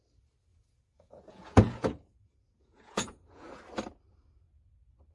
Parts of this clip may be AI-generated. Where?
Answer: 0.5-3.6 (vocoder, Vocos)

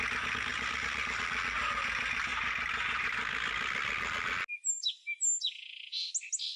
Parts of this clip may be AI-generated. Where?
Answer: 0.5-1.2 (vocoder, BigVGAN v2)

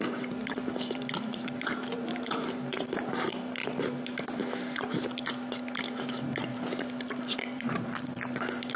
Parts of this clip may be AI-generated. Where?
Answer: 0.0-3.6 (vocoder, BigVGAN v2); 7.2-8.8